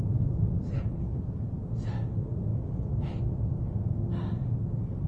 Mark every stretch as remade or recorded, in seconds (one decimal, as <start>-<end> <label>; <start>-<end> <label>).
0.0-5.1 recorded